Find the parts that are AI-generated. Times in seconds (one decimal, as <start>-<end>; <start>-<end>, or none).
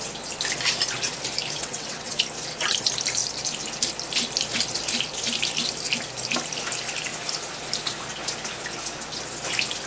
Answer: 1.6-2.2